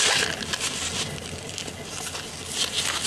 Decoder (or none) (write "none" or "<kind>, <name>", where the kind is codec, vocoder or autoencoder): none